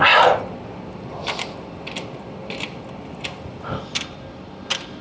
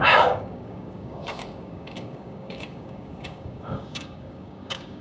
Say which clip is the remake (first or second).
second